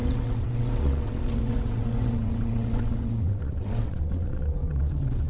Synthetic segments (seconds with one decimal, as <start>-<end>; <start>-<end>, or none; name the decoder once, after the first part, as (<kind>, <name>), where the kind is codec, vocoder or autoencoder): 0.0-5.3 (vocoder, WaveNeXt)